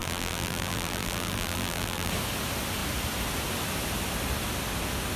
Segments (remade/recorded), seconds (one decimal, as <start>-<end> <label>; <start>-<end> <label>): 0.0-2.1 remade; 2.1-5.2 recorded